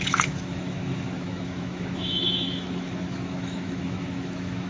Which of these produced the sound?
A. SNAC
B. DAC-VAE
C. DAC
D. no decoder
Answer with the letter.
B